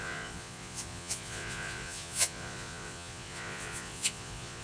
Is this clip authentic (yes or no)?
no